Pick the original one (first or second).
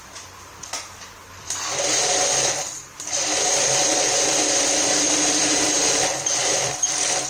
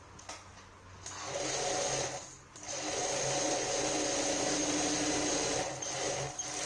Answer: second